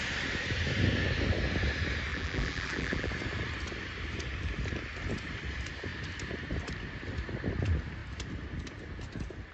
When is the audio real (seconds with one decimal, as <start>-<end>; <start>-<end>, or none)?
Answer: 0.0-2.1; 3.1-9.5